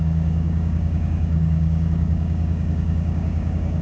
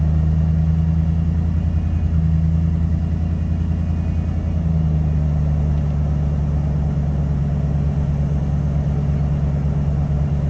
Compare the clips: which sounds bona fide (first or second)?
second